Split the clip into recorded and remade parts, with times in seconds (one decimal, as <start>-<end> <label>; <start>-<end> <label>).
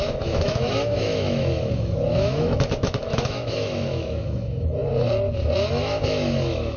0.0-4.8 remade; 4.8-5.7 recorded; 5.7-6.8 remade